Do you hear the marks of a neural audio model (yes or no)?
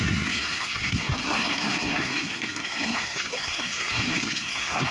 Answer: yes